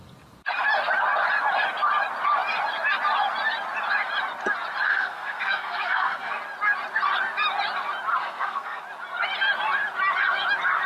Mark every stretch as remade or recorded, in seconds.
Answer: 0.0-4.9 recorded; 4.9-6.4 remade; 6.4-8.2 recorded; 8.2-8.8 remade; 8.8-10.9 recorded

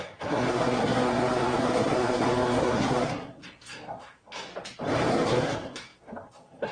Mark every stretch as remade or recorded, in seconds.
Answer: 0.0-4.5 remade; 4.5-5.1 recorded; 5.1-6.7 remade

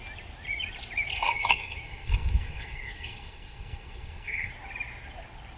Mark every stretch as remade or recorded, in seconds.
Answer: 0.0-1.1 recorded; 1.1-4.5 remade; 4.5-5.6 recorded

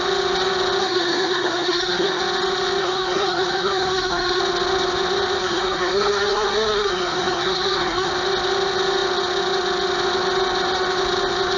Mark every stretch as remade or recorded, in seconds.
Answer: 0.0-0.8 recorded; 0.8-2.2 remade; 2.2-2.8 recorded; 2.8-4.4 remade; 4.4-5.4 recorded; 5.4-8.1 remade; 8.1-11.6 recorded

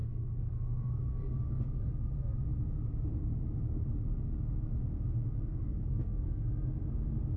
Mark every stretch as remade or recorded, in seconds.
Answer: 0.0-1.0 remade; 1.0-5.5 recorded; 5.5-6.5 remade; 6.5-7.4 recorded